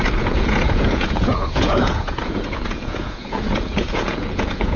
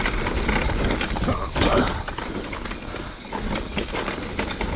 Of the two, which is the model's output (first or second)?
first